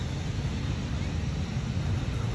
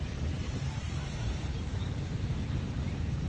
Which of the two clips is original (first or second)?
first